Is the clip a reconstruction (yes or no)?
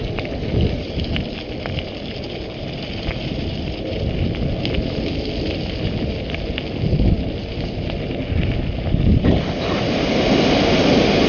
no